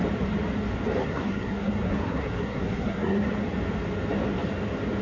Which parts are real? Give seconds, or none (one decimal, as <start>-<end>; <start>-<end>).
0.0-1.0; 3.3-5.0

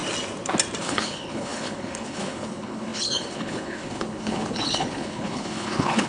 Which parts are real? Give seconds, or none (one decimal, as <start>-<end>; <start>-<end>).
0.0-0.8

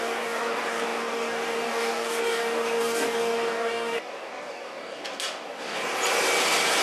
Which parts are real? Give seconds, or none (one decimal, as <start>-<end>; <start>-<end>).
5.8-6.8